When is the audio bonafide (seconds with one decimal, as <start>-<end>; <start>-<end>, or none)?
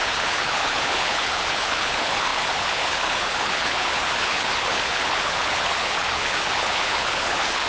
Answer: none